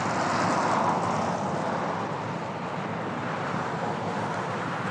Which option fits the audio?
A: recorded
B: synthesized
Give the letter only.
A